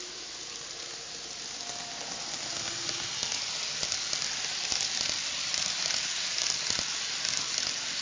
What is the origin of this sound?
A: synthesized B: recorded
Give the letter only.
B